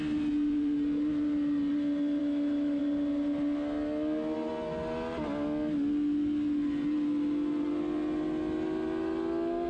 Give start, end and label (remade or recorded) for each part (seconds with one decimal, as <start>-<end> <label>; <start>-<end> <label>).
0.0-2.2 recorded; 2.2-2.8 remade; 2.8-9.7 recorded